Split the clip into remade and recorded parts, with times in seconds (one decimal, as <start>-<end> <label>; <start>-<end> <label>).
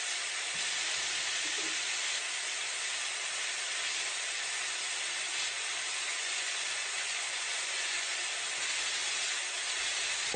0.0-6.1 recorded; 6.1-8.2 remade; 8.2-10.4 recorded